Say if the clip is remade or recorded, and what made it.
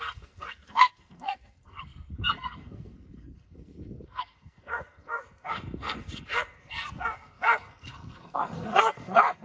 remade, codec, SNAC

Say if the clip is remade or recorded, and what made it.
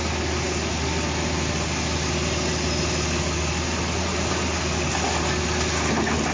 recorded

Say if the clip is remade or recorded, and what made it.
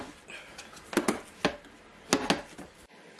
recorded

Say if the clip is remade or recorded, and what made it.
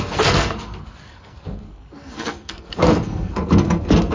remade, codec, SNAC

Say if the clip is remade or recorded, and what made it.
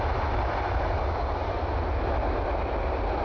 recorded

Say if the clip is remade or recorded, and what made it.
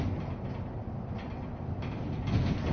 recorded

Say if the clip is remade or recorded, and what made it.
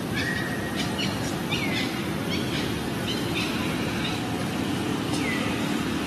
recorded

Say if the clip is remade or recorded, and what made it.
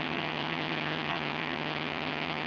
remade, vocoder, HiFi-GAN